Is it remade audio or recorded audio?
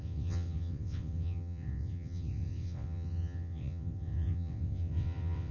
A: remade